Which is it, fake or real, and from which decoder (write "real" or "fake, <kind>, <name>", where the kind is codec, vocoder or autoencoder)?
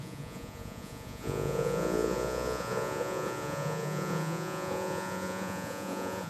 fake, vocoder, Vocos